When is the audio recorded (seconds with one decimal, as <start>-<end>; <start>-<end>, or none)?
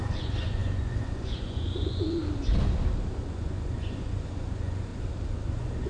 2.2-3.2; 4.9-5.5